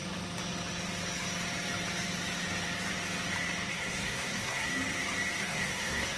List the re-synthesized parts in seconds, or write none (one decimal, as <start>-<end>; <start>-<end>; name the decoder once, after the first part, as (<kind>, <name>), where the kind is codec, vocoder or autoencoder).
3.7-4.7 (codec, SNAC); 5.4-6.2